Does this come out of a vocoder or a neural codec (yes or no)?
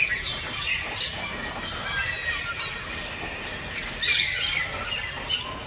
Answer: no